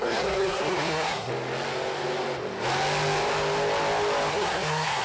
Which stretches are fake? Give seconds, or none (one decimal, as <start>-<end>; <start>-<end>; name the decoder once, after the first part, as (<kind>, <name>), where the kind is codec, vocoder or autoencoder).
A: 0.0-1.3 (codec, SNAC); 4.3-5.0